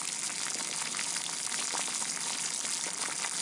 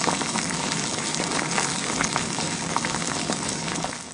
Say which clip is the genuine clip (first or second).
first